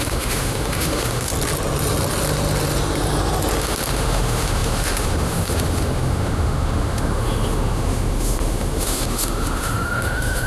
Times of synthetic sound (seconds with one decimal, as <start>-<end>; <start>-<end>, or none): 0.0-1.3; 3.6-10.5